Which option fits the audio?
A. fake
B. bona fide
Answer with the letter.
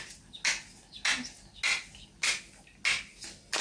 B